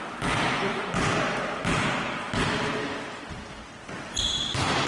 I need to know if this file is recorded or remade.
recorded